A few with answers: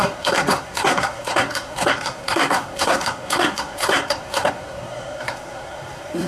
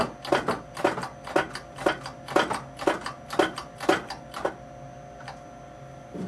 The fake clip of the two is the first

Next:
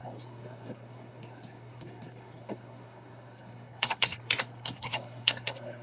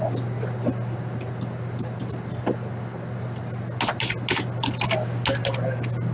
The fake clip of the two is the first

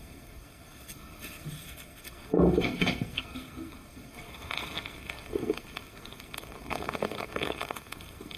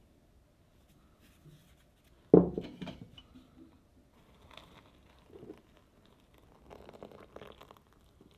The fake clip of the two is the first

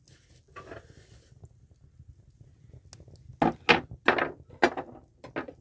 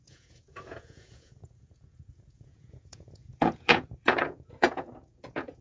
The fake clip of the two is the second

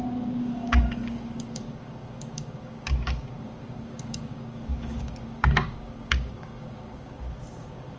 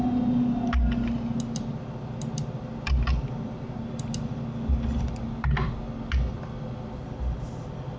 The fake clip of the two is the first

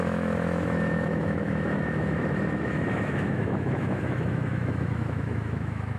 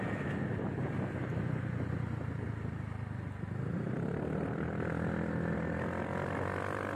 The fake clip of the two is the first